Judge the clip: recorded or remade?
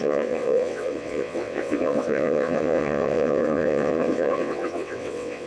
remade